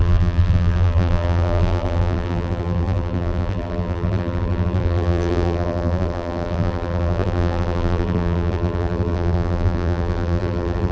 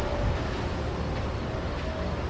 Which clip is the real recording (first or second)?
second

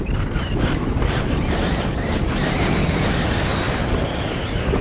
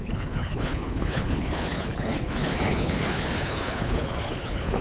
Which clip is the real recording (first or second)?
first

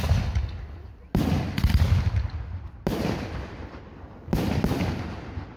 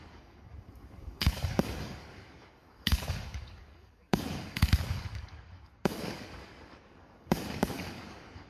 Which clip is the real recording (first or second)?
first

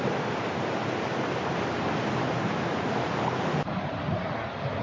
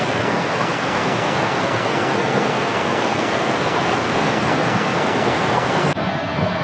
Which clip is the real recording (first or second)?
first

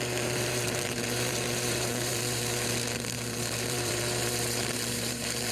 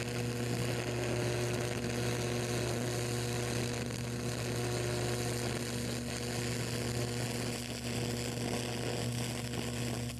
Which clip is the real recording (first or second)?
second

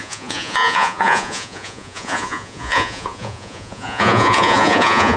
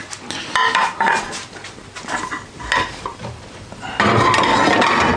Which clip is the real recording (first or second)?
second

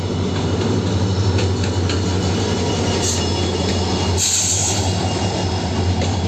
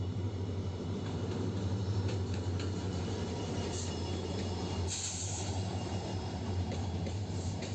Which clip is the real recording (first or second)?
first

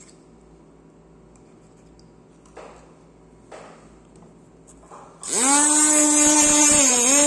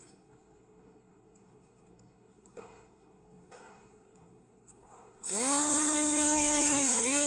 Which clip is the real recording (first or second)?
first